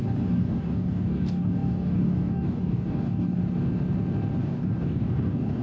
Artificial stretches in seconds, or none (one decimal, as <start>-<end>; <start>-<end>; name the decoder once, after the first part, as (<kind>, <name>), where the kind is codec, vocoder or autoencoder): 0.0-3.4 (codec, DAC); 4.4-5.6